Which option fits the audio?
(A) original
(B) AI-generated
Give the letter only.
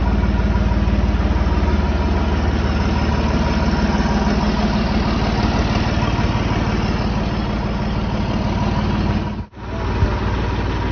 A